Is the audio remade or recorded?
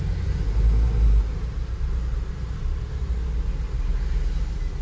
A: recorded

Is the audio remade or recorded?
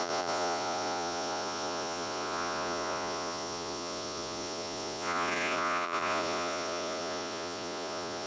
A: remade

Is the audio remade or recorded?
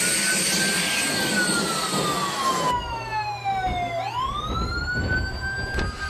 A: recorded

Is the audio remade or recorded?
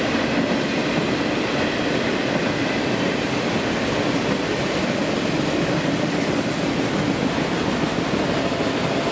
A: recorded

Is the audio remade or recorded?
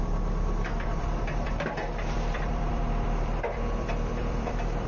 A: remade